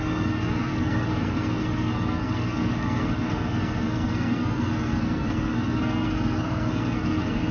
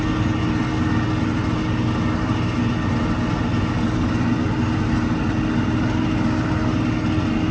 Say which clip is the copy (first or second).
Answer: first